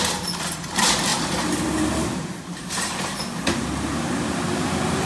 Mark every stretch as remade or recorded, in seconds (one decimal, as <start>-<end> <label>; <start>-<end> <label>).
0.0-5.1 recorded